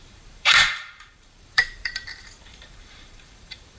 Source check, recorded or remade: remade